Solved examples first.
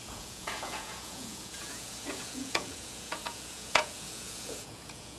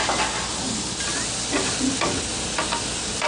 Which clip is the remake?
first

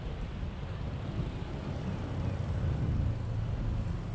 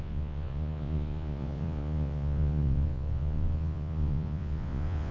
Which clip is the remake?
second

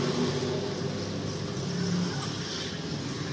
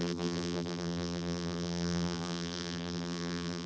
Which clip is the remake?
second